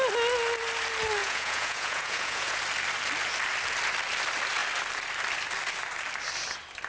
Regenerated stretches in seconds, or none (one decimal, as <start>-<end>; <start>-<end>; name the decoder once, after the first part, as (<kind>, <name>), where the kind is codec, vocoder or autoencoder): 1.2-2.6 (vocoder, Vocos)